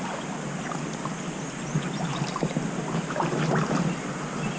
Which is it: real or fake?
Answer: real